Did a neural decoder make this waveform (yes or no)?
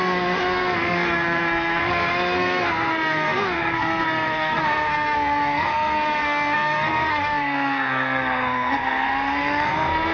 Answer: yes